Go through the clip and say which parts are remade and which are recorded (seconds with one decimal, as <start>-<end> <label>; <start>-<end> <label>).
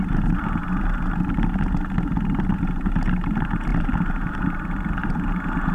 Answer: 0.0-0.6 remade; 0.6-2.7 recorded; 2.7-3.7 remade; 3.7-4.3 recorded; 4.3-5.7 remade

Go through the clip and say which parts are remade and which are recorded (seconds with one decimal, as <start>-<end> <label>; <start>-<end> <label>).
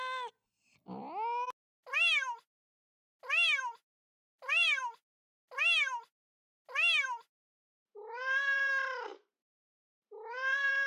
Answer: 0.0-3.9 recorded; 3.9-5.3 remade; 5.3-7.4 recorded; 7.4-8.7 remade; 8.7-9.1 recorded; 9.1-10.9 remade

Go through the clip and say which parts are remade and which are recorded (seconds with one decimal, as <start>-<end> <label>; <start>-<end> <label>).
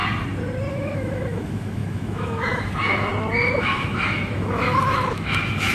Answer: 0.0-0.7 recorded; 0.7-3.1 remade; 3.1-3.6 recorded; 3.6-5.7 remade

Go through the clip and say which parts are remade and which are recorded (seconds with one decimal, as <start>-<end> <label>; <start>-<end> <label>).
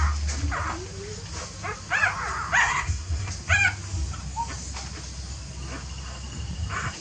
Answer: 0.0-2.6 recorded; 2.6-3.3 remade; 3.3-7.0 recorded